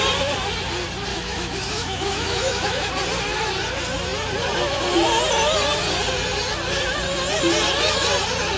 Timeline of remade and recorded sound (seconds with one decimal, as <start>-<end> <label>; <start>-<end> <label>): 0.0-1.1 recorded; 1.1-2.9 remade; 2.9-8.6 recorded